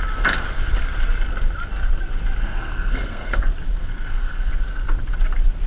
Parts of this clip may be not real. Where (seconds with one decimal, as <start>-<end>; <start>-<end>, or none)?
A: 2.4-3.4; 3.8-4.5